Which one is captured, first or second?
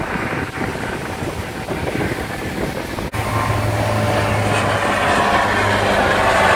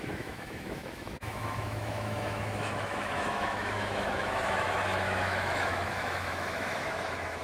first